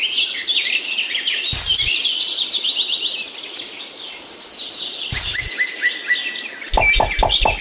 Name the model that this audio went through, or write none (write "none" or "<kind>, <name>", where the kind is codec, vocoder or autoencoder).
none